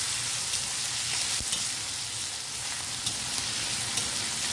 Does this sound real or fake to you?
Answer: real